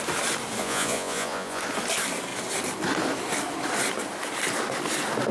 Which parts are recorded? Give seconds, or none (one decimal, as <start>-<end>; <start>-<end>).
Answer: 0.0-0.6; 1.6-5.3